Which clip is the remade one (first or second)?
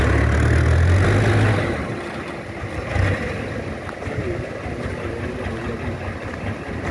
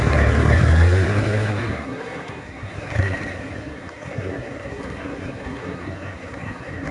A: second